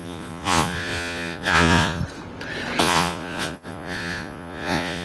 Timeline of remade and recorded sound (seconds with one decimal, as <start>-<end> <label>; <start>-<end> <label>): 0.0-2.0 remade; 2.0-2.8 recorded; 2.8-5.0 remade